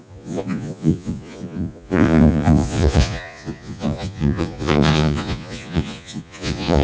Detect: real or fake fake